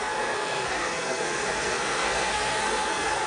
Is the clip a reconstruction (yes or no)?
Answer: yes